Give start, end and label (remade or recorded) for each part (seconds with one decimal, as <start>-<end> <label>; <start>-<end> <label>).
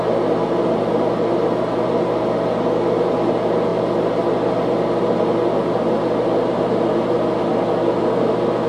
0.0-8.7 recorded